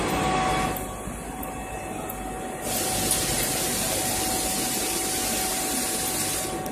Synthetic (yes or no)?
no